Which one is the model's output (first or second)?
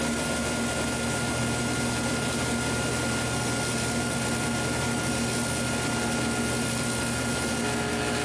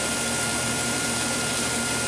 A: second